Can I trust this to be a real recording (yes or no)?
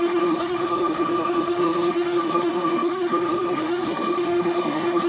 no